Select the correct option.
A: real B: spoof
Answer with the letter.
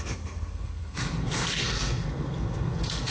B